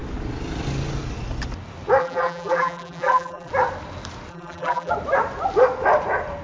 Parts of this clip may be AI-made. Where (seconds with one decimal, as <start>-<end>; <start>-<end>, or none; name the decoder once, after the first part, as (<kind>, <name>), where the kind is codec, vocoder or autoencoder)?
2.0-3.5 (vocoder, BigVGAN v2); 4.3-4.9